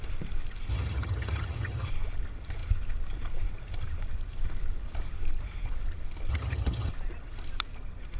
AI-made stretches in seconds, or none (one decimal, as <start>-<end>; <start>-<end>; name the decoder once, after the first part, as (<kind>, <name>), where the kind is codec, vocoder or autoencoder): 0.7-1.9 (vocoder, HiFi-GAN); 6.3-6.9